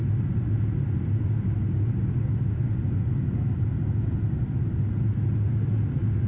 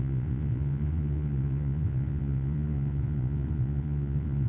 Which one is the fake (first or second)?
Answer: second